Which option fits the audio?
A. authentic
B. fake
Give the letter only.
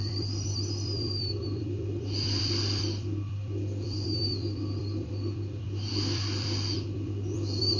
B